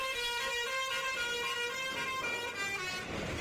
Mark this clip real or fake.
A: real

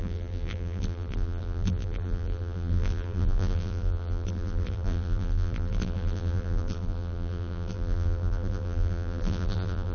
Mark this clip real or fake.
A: fake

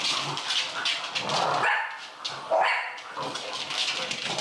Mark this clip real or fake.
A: real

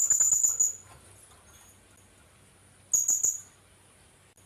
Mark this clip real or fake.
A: real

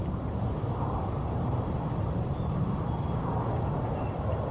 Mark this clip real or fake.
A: fake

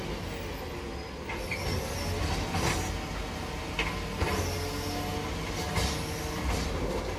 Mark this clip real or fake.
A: real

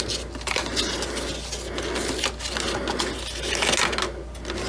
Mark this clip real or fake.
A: real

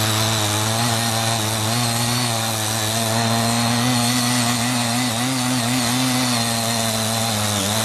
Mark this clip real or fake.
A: real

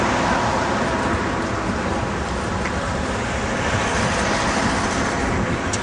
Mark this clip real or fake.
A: real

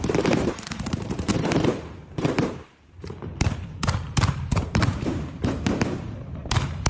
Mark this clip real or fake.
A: fake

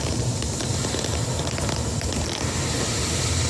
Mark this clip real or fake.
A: real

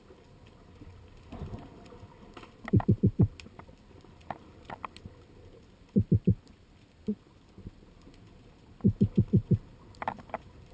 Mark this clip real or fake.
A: real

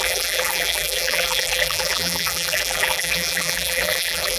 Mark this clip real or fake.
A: fake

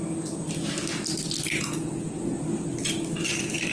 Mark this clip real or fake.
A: real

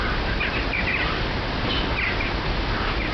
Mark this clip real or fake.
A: real